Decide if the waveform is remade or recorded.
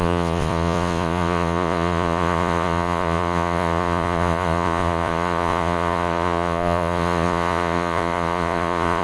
remade